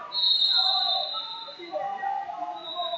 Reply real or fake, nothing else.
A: real